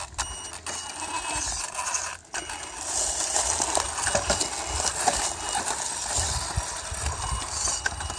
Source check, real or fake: real